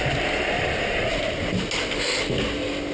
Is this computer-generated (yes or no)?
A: no